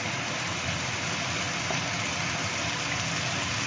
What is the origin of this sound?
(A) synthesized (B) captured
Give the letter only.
B